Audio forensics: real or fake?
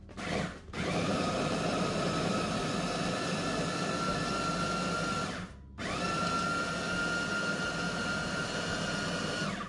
real